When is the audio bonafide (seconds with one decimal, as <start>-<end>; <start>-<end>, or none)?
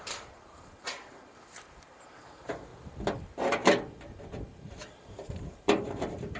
2.7-3.2; 3.6-4.9